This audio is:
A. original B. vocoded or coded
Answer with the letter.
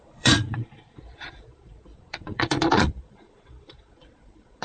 B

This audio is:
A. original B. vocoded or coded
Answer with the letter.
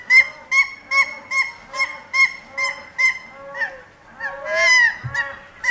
A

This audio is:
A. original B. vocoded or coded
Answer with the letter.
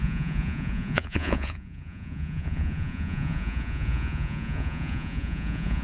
B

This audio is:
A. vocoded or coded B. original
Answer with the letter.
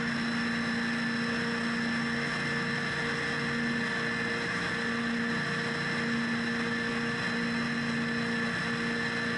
B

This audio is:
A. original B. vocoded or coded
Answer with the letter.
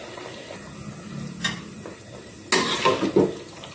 A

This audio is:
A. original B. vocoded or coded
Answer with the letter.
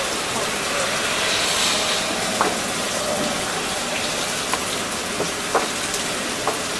A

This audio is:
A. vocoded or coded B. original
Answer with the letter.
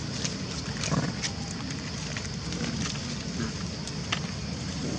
B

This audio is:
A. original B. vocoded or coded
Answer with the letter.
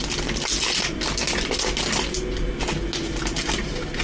A